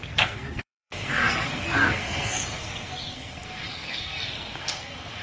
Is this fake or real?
fake